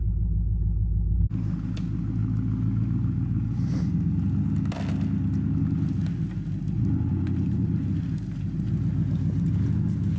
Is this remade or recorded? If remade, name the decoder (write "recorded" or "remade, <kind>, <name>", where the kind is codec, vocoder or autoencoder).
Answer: recorded